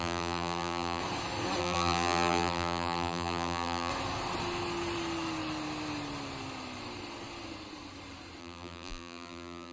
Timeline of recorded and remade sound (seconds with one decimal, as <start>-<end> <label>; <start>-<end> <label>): 0.0-1.0 remade; 1.0-1.6 recorded; 1.6-3.9 remade; 3.9-8.4 recorded; 8.4-9.7 remade